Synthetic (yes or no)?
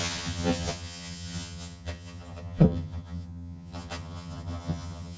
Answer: yes